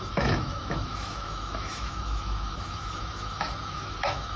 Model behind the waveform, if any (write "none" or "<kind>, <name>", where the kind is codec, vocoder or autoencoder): autoencoder, DAC-VAE